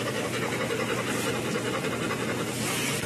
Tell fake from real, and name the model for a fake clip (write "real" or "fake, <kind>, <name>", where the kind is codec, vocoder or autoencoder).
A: real